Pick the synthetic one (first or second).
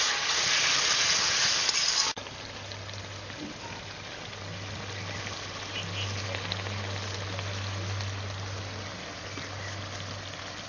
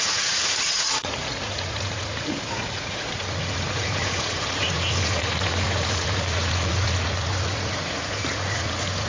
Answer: second